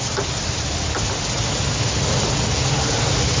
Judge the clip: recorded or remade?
recorded